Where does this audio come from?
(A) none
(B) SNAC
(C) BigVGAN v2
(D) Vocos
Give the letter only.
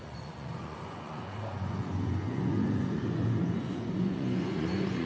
D